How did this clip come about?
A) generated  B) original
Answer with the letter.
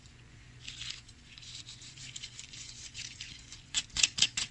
A